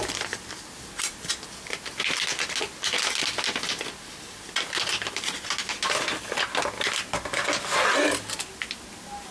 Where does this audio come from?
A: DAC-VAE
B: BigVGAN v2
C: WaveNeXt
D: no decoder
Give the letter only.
D